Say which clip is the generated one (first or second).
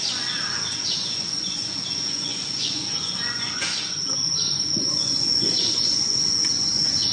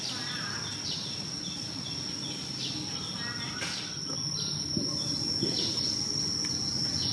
first